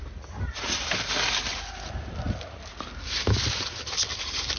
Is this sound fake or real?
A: real